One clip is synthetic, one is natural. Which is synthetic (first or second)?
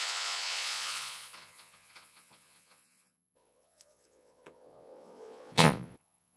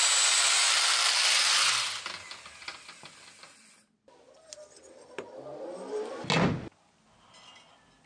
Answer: first